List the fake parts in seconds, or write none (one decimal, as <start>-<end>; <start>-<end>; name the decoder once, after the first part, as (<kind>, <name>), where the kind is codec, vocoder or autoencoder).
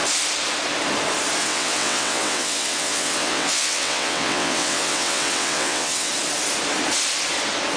1.4-6.1 (vocoder, WaveNeXt)